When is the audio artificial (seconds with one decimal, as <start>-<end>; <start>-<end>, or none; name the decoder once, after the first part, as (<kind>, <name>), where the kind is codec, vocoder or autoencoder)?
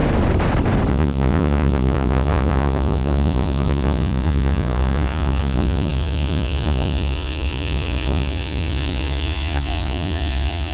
0.9-10.7 (vocoder, Vocos)